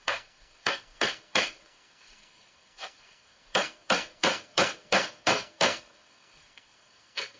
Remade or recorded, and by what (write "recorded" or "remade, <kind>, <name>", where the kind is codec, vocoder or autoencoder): remade, codec, SNAC